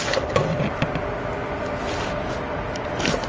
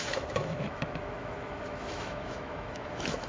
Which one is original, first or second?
first